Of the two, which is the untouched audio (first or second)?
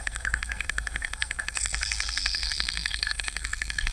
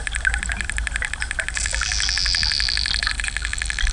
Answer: second